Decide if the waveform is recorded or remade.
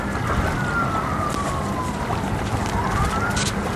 recorded